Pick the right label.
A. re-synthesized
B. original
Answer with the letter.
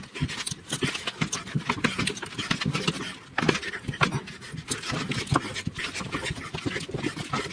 B